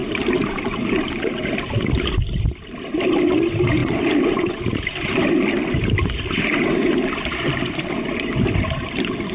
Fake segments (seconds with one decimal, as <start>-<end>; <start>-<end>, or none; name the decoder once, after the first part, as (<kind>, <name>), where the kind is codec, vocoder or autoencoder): 0.0-0.9 (vocoder, BigVGAN v2); 3.8-7.9

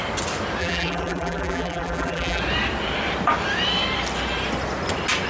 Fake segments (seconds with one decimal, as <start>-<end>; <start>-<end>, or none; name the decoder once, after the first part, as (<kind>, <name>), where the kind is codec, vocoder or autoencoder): 0.6-2.4 (vocoder, BigVGAN v2)

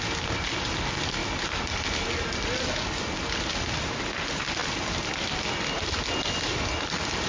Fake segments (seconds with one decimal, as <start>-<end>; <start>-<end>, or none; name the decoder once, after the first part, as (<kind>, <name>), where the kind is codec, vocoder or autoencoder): 1.2-3.2 (vocoder, BigVGAN v2); 4.6-6.2

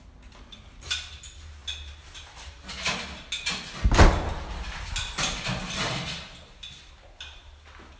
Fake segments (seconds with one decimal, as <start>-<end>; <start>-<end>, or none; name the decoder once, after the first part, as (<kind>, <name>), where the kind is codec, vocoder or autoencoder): none